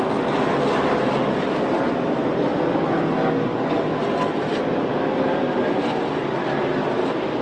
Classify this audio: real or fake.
real